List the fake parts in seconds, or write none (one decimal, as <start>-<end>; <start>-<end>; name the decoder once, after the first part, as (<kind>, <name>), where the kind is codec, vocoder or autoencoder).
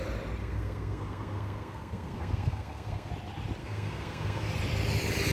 0.4-3.1 (codec, SNAC); 3.6-4.5